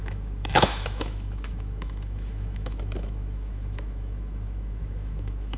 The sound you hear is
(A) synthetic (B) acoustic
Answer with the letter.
A